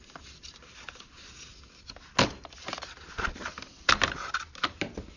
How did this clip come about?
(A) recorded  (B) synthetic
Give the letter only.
A